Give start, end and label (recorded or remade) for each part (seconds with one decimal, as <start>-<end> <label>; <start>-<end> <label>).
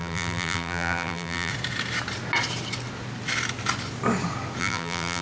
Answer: 0.0-1.5 remade; 1.5-4.6 recorded; 4.6-5.2 remade